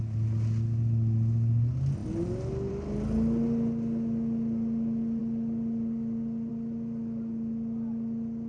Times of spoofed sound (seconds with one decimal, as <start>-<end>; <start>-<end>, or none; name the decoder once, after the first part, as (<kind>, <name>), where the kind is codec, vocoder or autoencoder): none